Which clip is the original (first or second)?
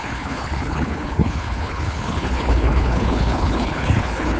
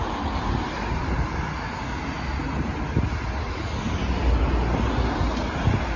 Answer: second